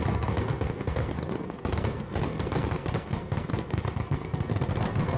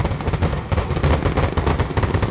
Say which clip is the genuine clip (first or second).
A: second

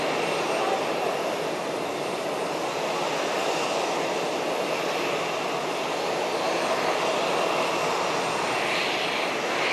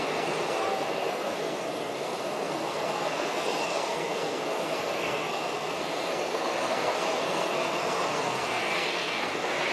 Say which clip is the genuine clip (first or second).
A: first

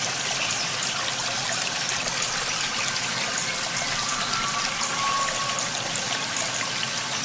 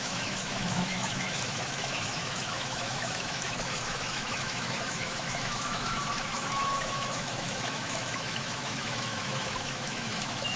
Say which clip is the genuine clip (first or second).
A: first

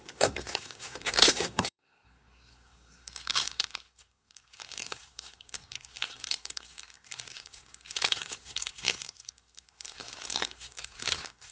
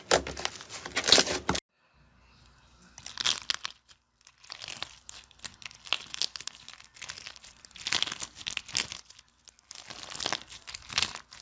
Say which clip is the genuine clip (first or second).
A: second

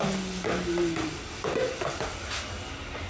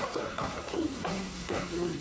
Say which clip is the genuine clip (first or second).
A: first